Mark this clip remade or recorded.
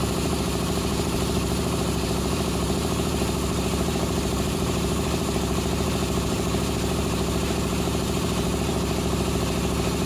remade